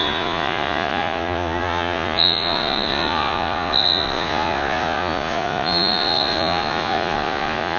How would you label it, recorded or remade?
remade